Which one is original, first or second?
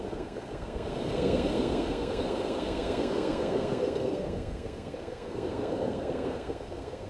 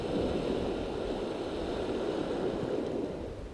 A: second